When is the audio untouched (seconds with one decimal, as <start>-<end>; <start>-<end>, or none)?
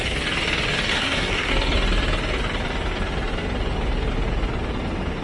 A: 0.0-0.9; 1.5-5.2